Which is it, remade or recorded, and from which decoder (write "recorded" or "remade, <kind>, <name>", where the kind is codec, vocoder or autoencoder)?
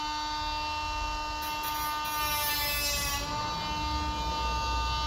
recorded